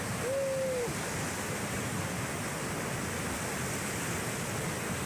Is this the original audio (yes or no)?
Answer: yes